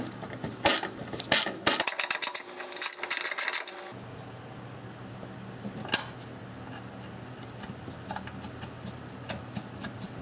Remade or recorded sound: recorded